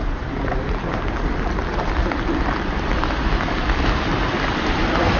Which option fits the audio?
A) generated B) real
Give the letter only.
A